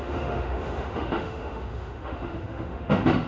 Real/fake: fake